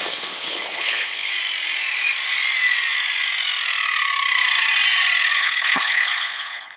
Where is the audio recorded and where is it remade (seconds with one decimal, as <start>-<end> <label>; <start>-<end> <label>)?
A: 0.0-1.3 remade; 1.3-5.4 recorded; 5.4-6.8 remade